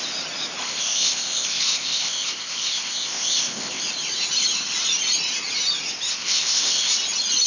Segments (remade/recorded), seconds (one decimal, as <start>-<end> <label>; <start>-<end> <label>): 0.0-0.6 recorded; 0.6-3.8 remade; 3.8-6.1 recorded; 6.1-6.9 remade; 6.9-7.5 recorded